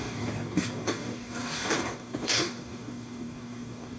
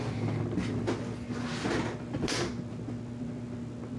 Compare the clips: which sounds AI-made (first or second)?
first